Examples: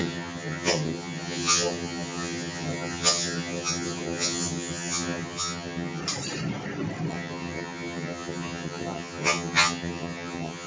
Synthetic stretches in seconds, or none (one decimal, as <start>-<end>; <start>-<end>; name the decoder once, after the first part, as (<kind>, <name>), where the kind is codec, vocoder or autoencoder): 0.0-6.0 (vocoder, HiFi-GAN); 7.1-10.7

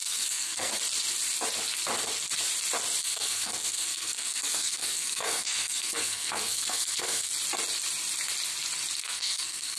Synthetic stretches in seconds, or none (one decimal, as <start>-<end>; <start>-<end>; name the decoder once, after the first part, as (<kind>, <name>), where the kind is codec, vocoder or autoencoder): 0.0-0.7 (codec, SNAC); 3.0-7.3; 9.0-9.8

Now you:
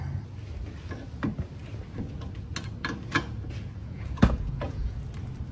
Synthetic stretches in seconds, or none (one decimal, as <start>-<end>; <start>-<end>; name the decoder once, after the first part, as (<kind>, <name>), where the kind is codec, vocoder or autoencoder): 3.8-5.0 (vocoder, Vocos)